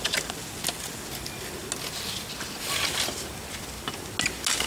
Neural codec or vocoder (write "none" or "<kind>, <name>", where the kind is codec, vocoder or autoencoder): none